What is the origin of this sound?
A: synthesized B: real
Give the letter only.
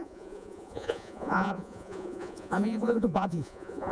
A